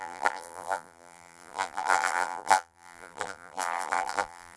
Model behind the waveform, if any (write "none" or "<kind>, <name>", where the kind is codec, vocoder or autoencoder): vocoder, BigVGAN v2